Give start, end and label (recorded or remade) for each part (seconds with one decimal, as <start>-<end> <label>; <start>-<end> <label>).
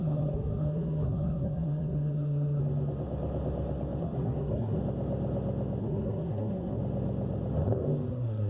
0.0-2.6 remade; 2.6-4.0 recorded; 4.0-4.8 remade; 4.8-5.8 recorded; 5.8-6.8 remade; 6.8-8.1 recorded; 8.1-8.5 remade